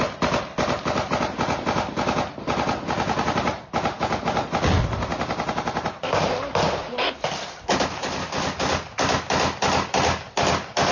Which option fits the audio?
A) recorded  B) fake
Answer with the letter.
A